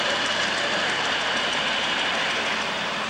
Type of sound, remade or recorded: recorded